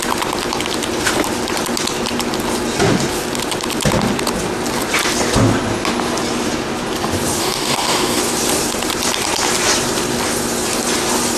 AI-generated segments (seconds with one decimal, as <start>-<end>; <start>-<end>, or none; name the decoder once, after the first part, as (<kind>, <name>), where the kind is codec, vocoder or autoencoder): 7.4-8.2 (codec, DAC)